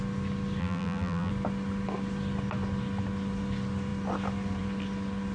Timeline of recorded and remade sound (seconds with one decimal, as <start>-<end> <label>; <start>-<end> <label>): 0.0-0.6 recorded; 0.6-1.3 remade; 1.3-5.3 recorded